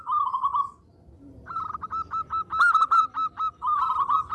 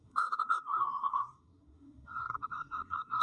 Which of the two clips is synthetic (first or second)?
second